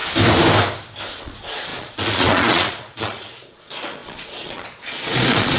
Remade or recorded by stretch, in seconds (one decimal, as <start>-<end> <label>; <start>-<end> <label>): 0.0-1.2 recorded; 1.2-5.6 remade